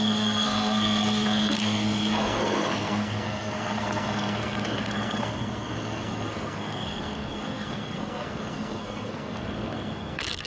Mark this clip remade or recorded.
remade